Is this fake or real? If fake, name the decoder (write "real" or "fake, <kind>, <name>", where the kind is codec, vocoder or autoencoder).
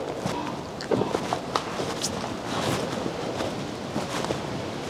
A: real